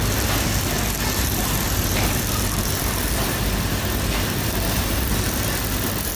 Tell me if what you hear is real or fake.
real